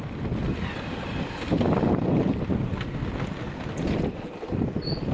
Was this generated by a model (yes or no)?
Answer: no